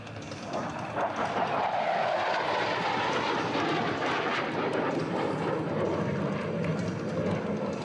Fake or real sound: real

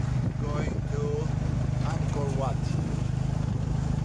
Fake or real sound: real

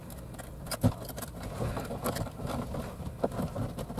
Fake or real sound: real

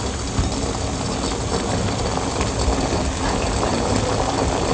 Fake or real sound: real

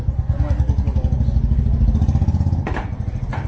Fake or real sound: real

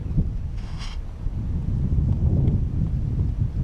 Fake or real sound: real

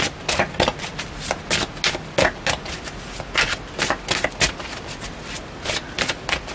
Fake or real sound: real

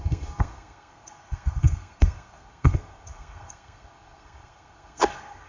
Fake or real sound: fake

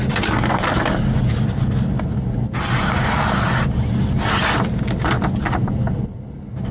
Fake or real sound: real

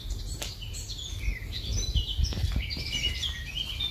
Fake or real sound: real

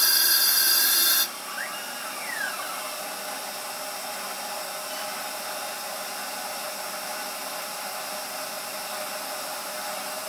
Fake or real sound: real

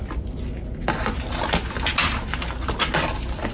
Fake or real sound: real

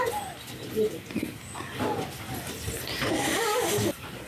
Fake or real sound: real